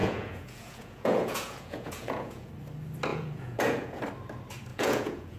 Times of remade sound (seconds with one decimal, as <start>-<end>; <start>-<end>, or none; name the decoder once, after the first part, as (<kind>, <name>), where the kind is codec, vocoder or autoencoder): 0.0-2.5 (vocoder, Vocos); 3.1-4.0; 4.7-5.4